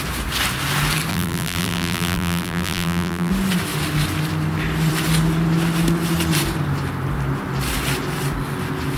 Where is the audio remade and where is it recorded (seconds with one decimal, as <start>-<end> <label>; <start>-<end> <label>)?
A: 0.0-1.1 recorded; 1.1-3.3 remade; 3.3-9.0 recorded